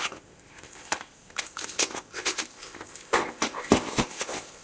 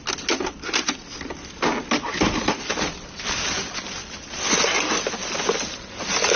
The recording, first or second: second